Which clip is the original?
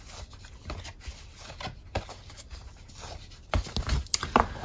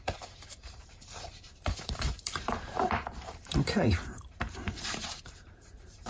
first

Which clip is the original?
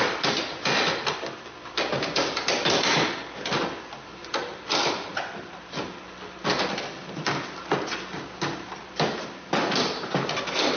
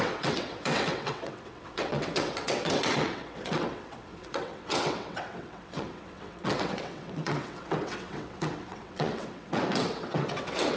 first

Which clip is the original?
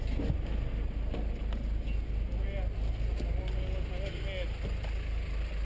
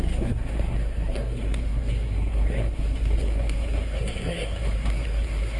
first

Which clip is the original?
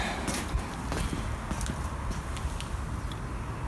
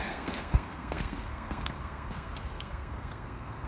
first